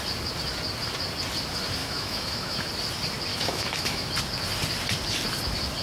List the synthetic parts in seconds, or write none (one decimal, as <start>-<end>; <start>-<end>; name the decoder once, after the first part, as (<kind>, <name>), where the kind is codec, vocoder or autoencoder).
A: 1.8-2.7 (autoencoder, DAC-VAE); 3.3-4.1

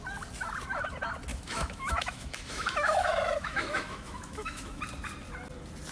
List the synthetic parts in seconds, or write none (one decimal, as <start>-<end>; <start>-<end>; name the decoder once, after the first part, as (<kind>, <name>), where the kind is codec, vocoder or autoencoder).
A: 1.3-4.8 (autoencoder, DAC-VAE)

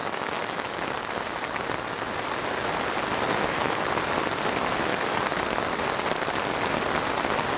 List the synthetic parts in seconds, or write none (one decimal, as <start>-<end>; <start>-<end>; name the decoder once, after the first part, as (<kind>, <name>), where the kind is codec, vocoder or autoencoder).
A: 0.0-0.9 (autoencoder, DAC-VAE); 3.3-3.9; 4.9-5.4

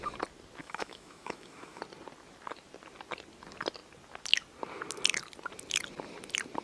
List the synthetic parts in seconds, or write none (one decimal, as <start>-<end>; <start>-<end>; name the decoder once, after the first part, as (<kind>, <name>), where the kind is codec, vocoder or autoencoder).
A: 0.6-1.8 (autoencoder, DAC-VAE)

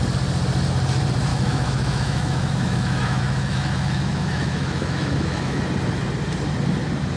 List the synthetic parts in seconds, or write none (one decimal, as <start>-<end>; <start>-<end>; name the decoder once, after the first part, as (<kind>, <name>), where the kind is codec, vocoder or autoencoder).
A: 1.3-5.6 (autoencoder, DAC-VAE)